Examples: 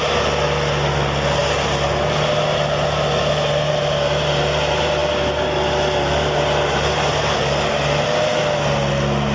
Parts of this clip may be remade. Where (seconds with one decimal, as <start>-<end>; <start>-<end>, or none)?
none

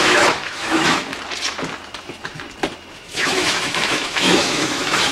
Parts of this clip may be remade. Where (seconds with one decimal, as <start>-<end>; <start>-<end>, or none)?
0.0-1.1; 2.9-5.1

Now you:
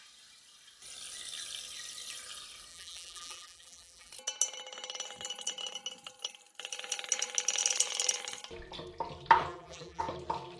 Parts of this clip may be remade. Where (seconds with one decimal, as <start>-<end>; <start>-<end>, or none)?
2.7-4.1; 9.5-10.0